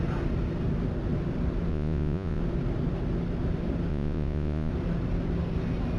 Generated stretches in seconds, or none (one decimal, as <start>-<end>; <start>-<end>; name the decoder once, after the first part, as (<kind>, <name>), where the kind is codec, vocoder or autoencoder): 1.7-2.4 (vocoder, Vocos); 3.9-4.7